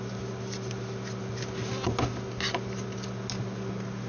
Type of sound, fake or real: real